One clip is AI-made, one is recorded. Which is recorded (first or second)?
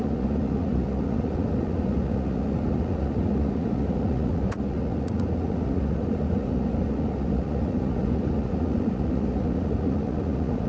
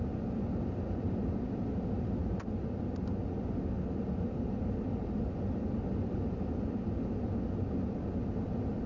second